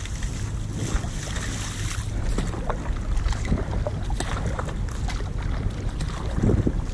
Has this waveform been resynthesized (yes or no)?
no